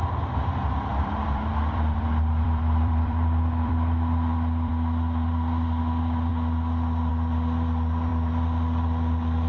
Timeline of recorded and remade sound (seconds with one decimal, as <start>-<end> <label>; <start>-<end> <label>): 0.0-0.9 recorded; 0.9-4.7 remade; 4.7-8.1 recorded; 8.1-9.5 remade